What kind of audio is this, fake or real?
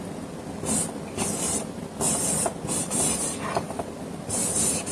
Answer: real